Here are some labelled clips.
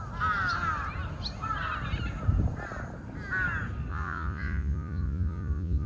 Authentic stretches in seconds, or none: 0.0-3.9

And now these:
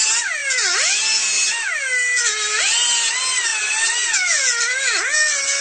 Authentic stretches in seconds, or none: 0.0-5.6

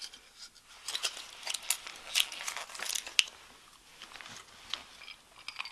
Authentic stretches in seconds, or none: 0.0-5.7

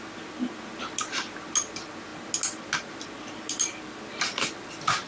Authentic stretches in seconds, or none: 0.0-5.1

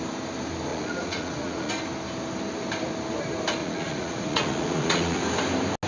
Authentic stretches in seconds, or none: 0.0-0.7; 1.7-3.6; 5.2-5.9